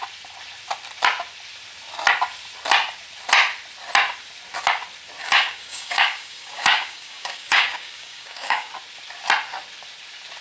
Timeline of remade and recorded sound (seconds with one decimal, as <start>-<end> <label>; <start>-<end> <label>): 0.0-5.2 recorded; 5.2-8.7 remade; 8.7-10.4 recorded